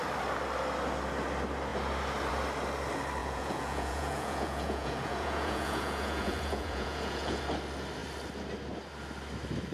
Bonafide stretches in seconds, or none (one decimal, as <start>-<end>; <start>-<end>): 0.0-3.2; 7.4-9.7